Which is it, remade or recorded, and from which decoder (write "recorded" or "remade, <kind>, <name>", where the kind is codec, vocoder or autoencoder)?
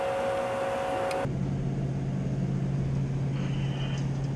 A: recorded